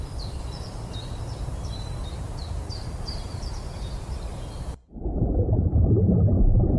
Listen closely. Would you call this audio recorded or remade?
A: remade